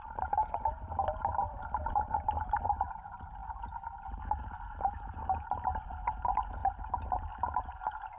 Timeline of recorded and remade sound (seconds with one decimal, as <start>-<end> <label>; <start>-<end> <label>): 0.0-6.6 remade; 6.6-7.5 recorded; 7.5-8.2 remade